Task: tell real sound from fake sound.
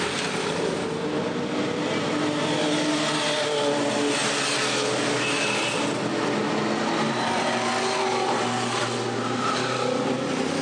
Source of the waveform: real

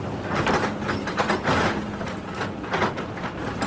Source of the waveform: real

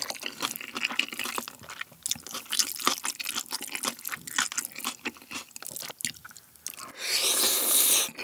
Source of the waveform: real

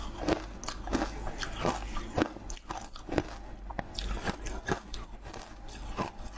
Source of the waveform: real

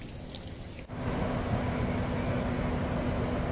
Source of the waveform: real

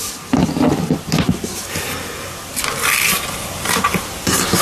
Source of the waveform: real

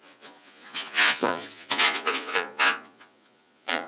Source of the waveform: fake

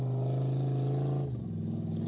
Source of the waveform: real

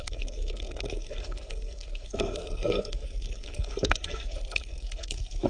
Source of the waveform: fake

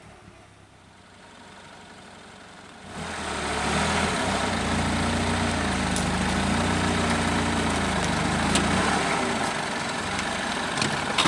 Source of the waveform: real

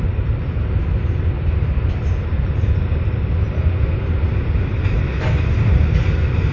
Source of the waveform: real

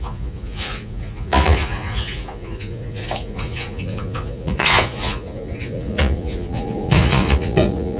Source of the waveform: fake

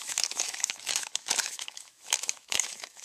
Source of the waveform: fake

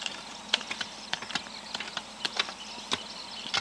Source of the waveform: real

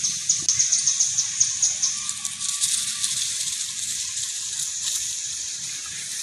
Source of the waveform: real